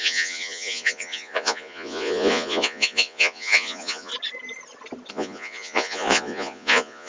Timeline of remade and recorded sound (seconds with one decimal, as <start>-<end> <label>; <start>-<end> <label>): 0.0-4.1 remade; 4.1-5.1 recorded; 5.1-7.1 remade